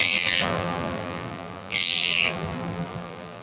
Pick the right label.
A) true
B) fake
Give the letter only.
B